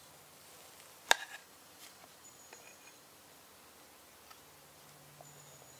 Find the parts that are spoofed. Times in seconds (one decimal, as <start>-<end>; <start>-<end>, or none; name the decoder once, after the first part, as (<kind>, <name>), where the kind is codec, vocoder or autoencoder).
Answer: 1.4-3.1 (vocoder, BigVGAN v2)